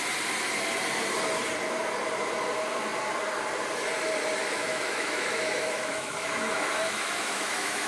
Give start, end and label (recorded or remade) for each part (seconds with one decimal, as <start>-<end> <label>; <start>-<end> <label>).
0.0-4.4 recorded; 4.4-7.9 remade